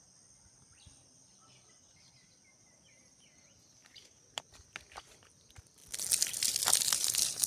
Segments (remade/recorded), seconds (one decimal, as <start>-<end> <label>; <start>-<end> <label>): 0.0-3.8 recorded; 3.8-4.4 remade; 4.4-7.5 recorded